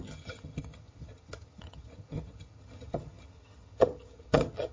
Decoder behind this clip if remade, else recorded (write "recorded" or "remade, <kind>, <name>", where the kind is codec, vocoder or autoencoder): remade, vocoder, HiFi-GAN